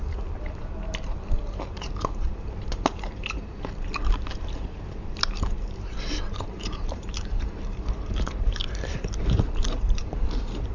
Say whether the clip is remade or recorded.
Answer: remade